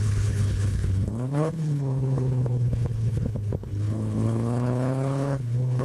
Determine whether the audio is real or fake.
fake